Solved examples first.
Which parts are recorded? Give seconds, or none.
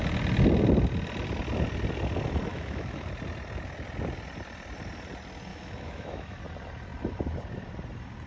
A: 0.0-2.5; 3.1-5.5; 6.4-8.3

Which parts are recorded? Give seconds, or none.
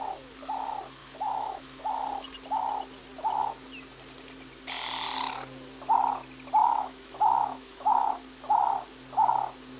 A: 0.0-1.0; 1.8-6.6; 8.1-9.8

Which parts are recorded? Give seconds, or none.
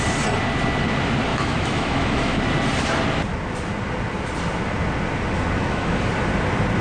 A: 0.0-1.3; 2.4-5.6; 6.1-6.8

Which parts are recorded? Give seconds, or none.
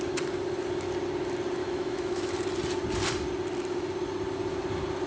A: 0.0-1.6; 2.3-5.1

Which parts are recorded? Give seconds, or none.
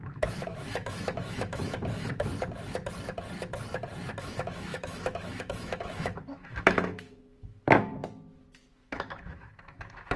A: 2.3-4.2; 7.9-8.7